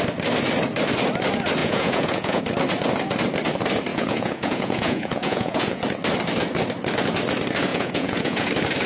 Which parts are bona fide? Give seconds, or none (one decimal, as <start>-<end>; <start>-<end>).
0.0-1.6; 2.4-3.9; 5.8-7.7; 8.5-8.9